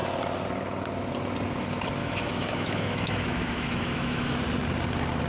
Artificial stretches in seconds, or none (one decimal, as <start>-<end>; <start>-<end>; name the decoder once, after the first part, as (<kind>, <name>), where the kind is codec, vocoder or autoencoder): 2.0-4.4 (autoencoder, DAC-VAE)